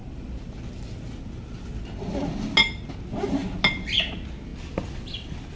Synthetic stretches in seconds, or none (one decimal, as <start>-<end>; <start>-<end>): none